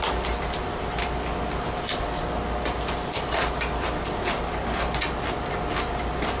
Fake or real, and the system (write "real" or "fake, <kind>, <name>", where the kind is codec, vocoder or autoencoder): real